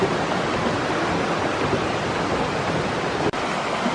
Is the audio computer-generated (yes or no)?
no